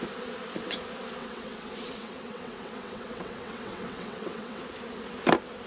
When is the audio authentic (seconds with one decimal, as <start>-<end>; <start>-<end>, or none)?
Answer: 0.0-1.2; 4.6-5.7